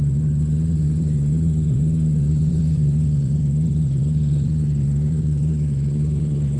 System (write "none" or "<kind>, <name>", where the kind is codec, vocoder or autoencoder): vocoder, Vocos